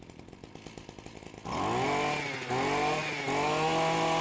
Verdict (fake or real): real